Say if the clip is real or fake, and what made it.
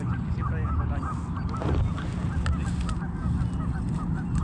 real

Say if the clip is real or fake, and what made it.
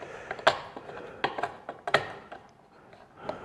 real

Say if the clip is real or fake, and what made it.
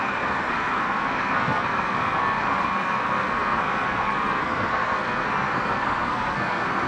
fake, codec, SNAC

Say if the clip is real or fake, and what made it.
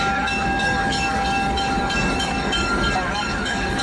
fake, codec, DAC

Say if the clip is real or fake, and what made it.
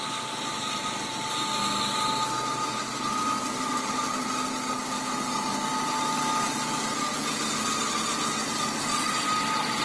real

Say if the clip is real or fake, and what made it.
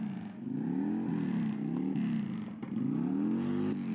real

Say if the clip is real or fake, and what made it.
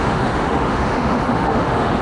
fake, autoencoder, DAC-VAE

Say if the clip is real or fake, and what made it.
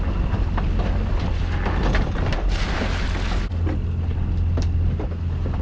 real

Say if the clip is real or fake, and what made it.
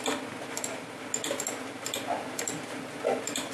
real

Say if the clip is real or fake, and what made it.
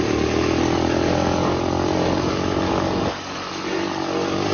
real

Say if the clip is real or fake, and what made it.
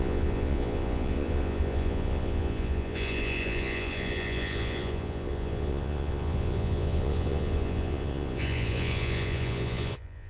fake, vocoder, Vocos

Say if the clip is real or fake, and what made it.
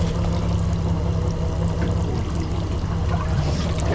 real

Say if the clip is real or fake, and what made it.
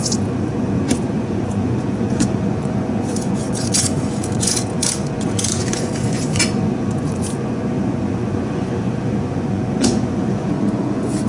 fake, vocoder, Vocos